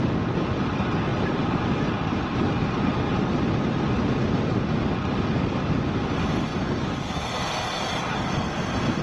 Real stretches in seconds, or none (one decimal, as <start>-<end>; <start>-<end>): 0.0-9.0